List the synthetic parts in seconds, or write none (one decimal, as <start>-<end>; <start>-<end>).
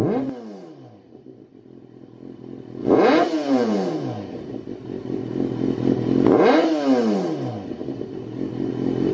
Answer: 2.8-4.5